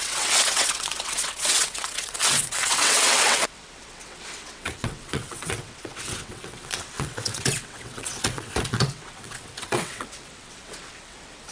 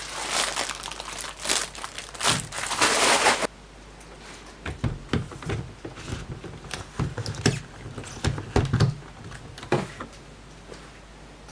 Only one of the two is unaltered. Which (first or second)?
second